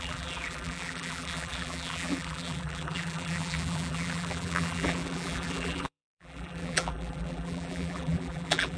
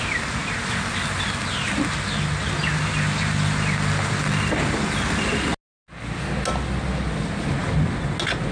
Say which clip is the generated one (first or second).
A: first